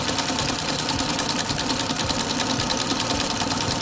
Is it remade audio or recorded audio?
recorded